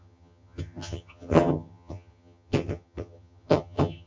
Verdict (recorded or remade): remade